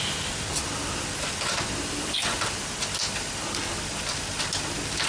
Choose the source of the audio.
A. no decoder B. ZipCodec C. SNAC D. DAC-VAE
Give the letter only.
A